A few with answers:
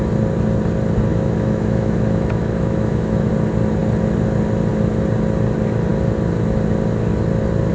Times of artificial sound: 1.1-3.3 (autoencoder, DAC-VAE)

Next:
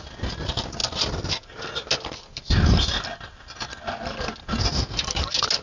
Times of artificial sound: none

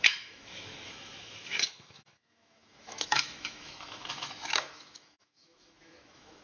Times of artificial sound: 0.0-6.4 (autoencoder, DAC-VAE)

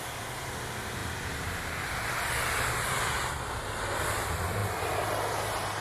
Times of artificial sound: none